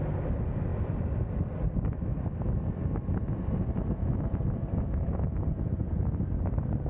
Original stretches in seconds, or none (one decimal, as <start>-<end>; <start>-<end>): 0.0-0.7; 2.7-6.9